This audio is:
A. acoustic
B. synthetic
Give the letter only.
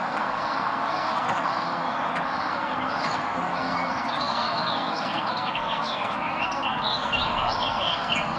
B